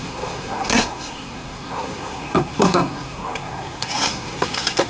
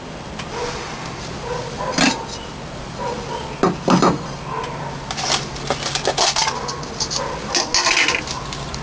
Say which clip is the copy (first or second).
first